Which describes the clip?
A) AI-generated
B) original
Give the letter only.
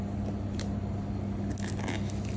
B